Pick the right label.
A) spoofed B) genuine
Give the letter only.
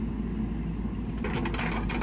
B